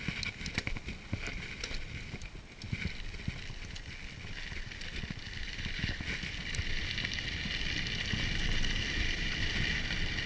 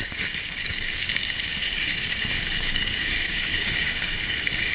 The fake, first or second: second